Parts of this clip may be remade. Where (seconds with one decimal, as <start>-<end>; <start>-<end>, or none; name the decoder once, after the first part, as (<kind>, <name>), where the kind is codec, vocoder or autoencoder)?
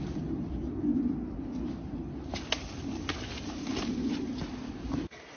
none